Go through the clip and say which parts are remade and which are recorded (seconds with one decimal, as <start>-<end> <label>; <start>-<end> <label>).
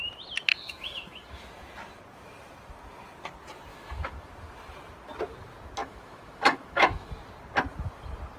0.0-0.5 recorded; 0.5-1.5 remade; 1.5-3.7 recorded; 3.7-4.3 remade; 4.3-5.8 recorded; 5.8-7.1 remade; 7.1-8.4 recorded